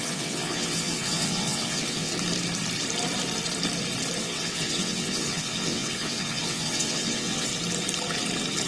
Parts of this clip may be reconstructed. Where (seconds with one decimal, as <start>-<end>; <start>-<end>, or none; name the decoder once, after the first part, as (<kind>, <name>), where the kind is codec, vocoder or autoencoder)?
0.0-2.1 (vocoder, WaveNeXt); 4.2-7.5